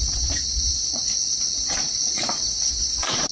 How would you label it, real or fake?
fake